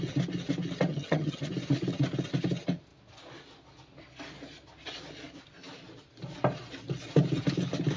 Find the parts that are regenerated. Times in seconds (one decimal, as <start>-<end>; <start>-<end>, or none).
0.9-1.5